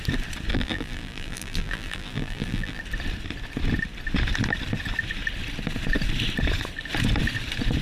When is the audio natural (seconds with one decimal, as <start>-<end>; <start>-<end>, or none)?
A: 0.0-0.5; 2.8-7.8